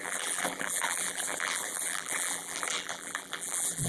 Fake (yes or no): yes